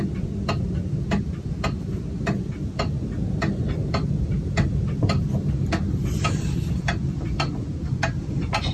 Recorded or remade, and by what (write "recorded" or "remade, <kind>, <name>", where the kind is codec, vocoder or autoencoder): recorded